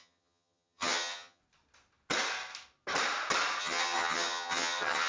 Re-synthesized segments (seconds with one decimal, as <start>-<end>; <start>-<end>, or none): 0.0-1.4; 3.6-5.1